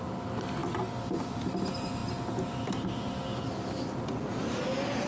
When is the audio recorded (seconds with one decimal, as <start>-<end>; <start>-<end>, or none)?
0.0-5.1